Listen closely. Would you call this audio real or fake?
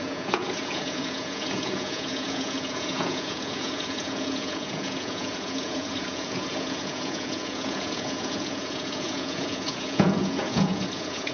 fake